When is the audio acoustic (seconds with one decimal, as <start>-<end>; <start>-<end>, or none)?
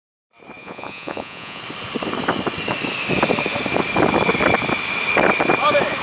0.0-0.6; 1.6-6.0